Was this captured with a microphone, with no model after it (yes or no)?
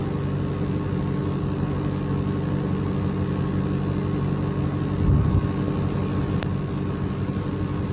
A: yes